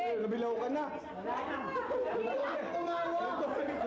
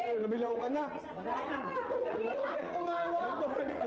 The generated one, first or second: second